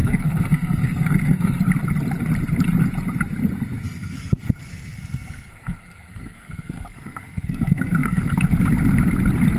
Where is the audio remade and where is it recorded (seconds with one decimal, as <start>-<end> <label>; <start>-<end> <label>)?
0.0-1.6 remade; 1.6-3.8 recorded; 3.8-8.2 remade; 8.2-9.6 recorded